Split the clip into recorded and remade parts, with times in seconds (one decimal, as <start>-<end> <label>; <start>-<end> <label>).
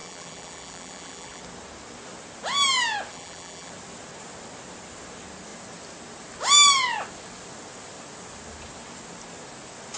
0.0-1.4 remade; 1.4-3.1 recorded; 3.1-3.7 remade; 3.7-10.0 recorded